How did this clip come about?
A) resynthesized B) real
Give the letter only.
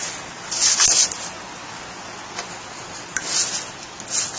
B